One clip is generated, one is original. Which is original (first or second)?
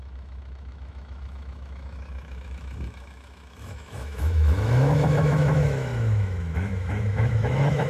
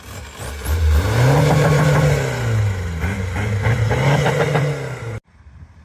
second